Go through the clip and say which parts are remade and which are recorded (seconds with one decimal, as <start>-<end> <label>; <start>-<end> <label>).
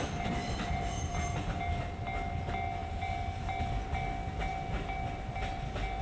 0.0-0.4 recorded; 0.4-1.5 remade; 1.5-2.8 recorded; 2.8-3.5 remade; 3.5-6.0 recorded